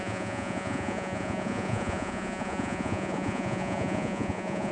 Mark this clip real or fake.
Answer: fake